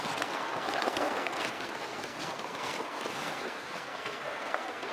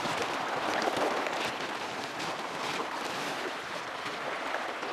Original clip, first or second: second